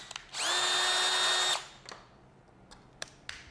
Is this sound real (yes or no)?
yes